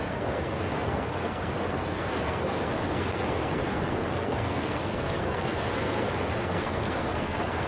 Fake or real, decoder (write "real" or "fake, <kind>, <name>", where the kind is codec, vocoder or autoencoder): fake, codec, SNAC